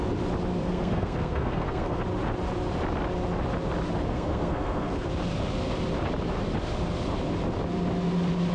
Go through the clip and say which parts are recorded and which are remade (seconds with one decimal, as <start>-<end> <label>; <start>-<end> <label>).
0.0-0.6 recorded; 0.6-2.0 remade; 2.0-4.1 recorded; 4.1-5.1 remade; 5.1-8.5 recorded